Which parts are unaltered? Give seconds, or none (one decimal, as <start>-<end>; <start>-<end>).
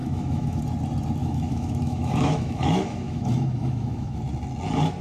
0.6-1.2; 4.2-5.0